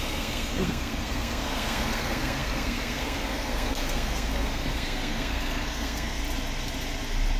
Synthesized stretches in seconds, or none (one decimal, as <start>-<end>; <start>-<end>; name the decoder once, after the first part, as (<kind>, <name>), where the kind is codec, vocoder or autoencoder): 0.0-6.2 (codec, SNAC)